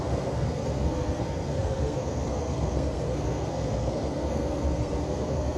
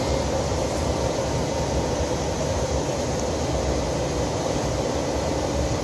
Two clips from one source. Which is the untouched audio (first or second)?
second